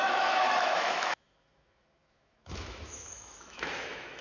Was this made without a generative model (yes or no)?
no